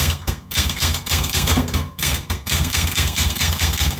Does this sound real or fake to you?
fake